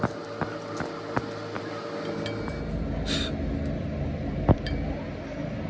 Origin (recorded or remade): recorded